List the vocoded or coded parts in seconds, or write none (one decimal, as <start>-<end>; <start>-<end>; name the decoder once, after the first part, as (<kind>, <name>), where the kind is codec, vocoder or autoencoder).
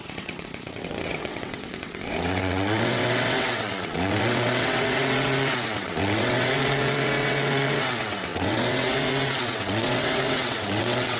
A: 0.0-11.2 (vocoder, WaveNeXt)